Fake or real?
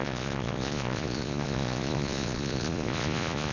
fake